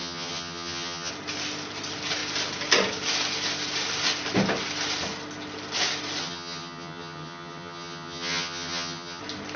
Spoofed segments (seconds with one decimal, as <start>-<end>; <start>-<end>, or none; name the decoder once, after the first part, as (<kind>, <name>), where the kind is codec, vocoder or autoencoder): 0.0-1.1 (vocoder, HiFi-GAN); 6.2-9.2